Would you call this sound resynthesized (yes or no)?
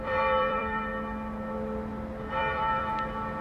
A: yes